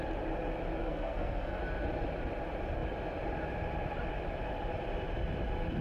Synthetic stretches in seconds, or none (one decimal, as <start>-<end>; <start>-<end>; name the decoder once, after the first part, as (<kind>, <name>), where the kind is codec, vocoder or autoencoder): 0.8-1.6 (codec, SNAC)